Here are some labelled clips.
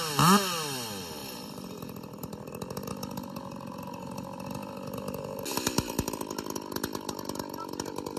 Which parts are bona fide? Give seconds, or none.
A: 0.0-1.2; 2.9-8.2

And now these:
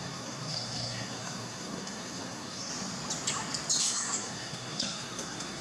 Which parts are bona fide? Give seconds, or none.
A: 2.7-3.8

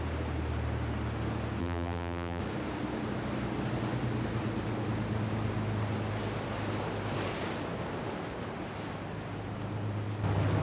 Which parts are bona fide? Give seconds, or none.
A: 0.0-1.6; 2.4-10.6

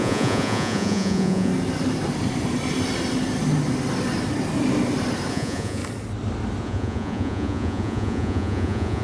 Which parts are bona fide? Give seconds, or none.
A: 1.5-5.3; 5.8-6.6